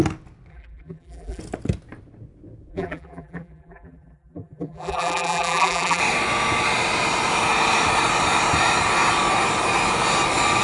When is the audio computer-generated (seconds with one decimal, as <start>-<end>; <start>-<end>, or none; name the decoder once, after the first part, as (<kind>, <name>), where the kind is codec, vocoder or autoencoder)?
0.5-1.4 (vocoder, BigVGAN v2); 2.7-6.0

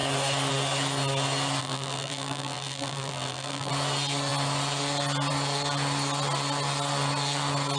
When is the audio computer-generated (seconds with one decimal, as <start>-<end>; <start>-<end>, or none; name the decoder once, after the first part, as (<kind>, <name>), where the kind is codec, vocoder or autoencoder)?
1.6-3.7 (vocoder, BigVGAN v2)